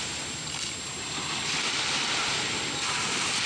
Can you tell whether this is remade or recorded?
recorded